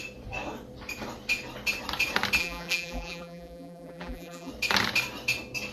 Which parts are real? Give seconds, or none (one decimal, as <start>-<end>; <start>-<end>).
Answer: 0.0-2.4; 4.5-5.7